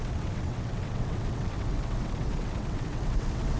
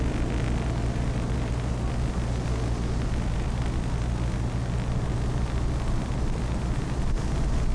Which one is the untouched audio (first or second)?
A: second